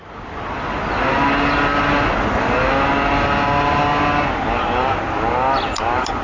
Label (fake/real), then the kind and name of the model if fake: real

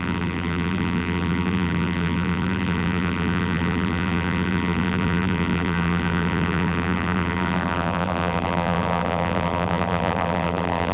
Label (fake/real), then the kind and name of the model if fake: fake, vocoder, BigVGAN v2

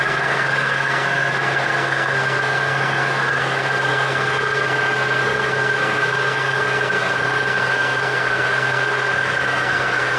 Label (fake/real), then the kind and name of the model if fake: fake, codec, SNAC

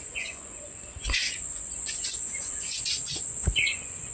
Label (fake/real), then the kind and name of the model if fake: fake, vocoder, Vocos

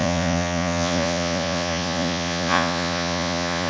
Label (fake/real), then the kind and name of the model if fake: fake, vocoder, Vocos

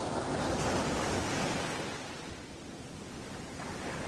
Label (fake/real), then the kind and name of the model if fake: real